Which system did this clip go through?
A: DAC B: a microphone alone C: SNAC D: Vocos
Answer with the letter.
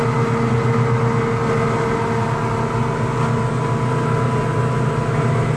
B